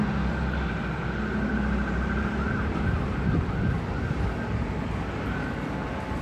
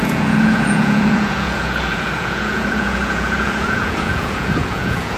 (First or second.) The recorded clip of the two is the first